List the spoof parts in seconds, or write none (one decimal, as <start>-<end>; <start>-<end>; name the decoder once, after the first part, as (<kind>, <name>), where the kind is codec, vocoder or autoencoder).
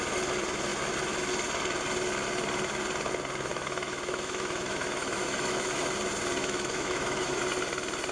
3.5-5.9 (autoencoder, DAC-VAE); 6.4-7.4